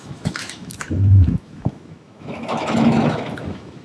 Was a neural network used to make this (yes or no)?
yes